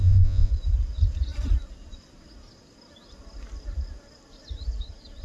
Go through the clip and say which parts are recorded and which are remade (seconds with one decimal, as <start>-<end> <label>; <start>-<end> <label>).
0.0-0.5 remade; 0.5-5.2 recorded